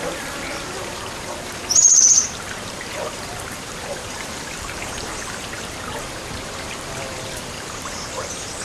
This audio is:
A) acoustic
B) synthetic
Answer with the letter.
B